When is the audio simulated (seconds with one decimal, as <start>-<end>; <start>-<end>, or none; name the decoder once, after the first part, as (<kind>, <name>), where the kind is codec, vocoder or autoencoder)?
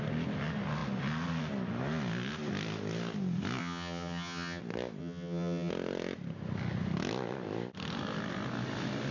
3.6-4.6 (vocoder, HiFi-GAN); 5.0-5.7